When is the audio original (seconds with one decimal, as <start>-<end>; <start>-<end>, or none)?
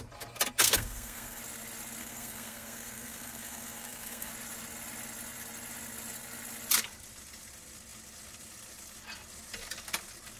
0.0-0.6; 1.4-2.0; 4.3-10.4